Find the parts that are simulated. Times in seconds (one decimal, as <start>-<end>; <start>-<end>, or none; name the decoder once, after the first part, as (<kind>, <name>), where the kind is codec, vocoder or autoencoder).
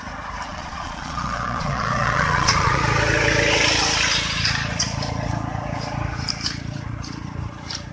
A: 0.5-2.8 (vocoder, Vocos)